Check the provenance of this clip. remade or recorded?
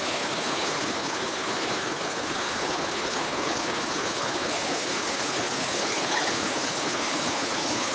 remade